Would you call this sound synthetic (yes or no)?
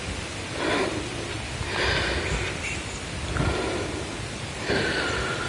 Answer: no